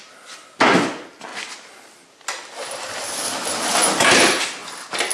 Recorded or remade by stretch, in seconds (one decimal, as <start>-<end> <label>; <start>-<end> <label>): 0.0-5.1 recorded